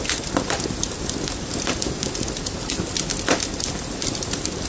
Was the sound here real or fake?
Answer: real